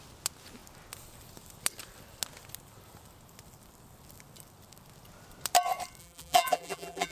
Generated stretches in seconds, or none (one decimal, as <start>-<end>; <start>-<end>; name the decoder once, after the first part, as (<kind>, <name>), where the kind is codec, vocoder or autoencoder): 6.0-7.1 (vocoder, BigVGAN v2)